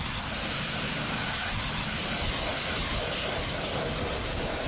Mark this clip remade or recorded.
recorded